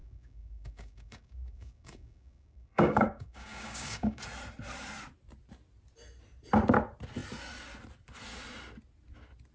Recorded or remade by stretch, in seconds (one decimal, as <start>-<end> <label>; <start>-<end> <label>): 0.0-4.2 remade; 4.2-9.5 recorded